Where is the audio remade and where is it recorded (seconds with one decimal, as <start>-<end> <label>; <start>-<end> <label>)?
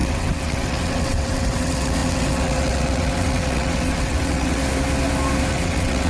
0.0-4.6 remade; 4.6-5.5 recorded; 5.5-6.1 remade